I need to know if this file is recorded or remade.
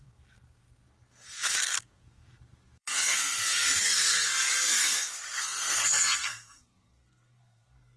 remade